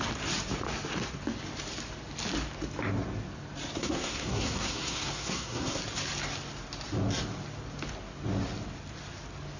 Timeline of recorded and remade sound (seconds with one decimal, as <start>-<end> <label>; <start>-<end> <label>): 0.0-3.8 recorded; 3.8-5.8 remade; 5.8-9.6 recorded